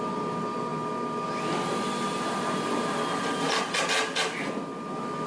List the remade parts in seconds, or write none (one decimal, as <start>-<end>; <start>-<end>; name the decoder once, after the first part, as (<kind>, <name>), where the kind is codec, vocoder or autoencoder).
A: none